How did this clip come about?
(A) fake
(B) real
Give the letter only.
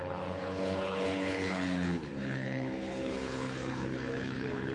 A